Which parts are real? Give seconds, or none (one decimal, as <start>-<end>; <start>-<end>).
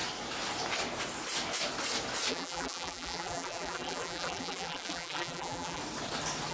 0.0-2.3; 5.8-6.5